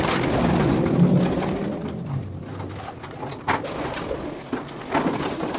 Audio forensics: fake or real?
real